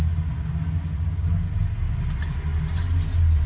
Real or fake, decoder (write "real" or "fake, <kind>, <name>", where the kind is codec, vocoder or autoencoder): real